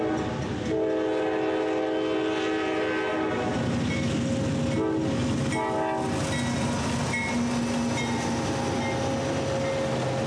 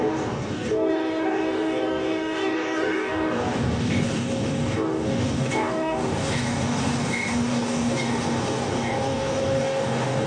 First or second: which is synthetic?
second